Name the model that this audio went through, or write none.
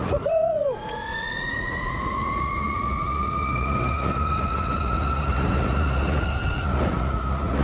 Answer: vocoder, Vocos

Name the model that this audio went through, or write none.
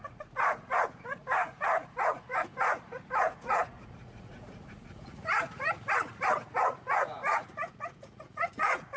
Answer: vocoder, Vocos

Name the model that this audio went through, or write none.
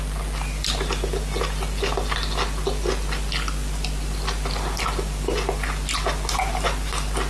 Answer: none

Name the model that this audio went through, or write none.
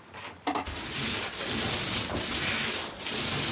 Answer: none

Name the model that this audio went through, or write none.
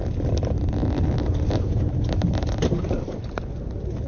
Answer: none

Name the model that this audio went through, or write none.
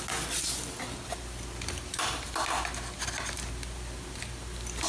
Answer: none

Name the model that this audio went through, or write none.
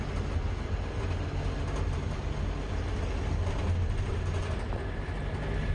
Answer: none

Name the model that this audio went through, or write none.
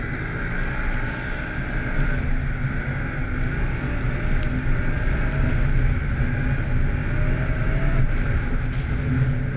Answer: none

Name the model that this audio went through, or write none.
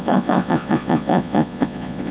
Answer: vocoder, Vocos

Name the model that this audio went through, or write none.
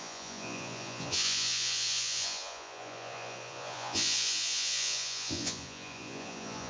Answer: vocoder, Vocos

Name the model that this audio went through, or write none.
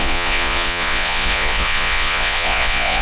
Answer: vocoder, Vocos